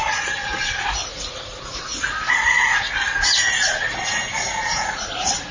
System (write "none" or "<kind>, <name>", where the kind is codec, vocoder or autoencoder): vocoder, Vocos